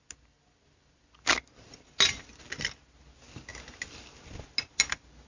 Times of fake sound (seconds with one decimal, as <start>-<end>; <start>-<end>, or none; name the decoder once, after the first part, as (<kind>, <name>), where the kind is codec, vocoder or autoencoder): none